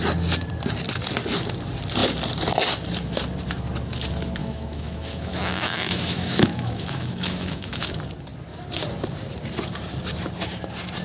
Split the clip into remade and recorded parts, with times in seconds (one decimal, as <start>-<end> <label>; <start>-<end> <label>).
0.0-4.4 recorded; 4.4-7.9 remade; 7.9-11.0 recorded